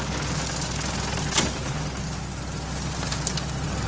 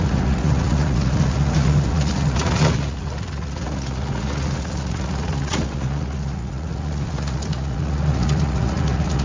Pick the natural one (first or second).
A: first